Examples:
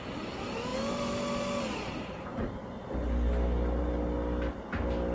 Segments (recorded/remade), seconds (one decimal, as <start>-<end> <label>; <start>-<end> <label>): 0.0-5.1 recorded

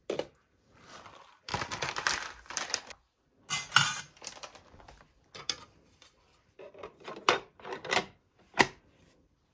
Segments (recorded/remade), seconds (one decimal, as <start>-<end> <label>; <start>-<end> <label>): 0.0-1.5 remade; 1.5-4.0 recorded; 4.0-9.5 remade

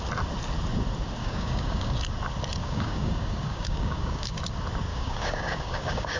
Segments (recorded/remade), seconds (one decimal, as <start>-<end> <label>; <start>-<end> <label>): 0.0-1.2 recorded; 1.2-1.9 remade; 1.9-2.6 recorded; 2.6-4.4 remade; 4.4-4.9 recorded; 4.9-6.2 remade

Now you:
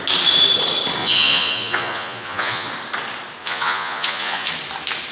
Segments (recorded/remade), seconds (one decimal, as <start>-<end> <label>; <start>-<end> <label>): 0.0-1.0 recorded; 1.0-2.7 remade; 2.7-3.4 recorded; 3.4-4.5 remade; 4.5-5.1 recorded

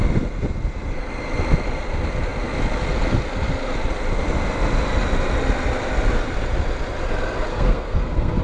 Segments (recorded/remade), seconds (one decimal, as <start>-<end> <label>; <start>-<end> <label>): 0.0-7.5 recorded; 7.5-8.4 remade

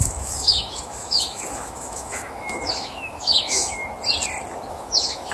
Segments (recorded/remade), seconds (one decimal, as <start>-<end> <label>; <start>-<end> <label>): 0.0-3.8 remade; 3.8-4.7 recorded; 4.7-5.3 remade